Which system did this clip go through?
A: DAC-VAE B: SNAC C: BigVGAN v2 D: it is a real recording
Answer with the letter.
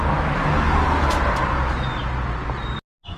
D